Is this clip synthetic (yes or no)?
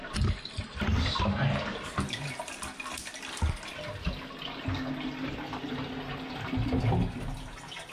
no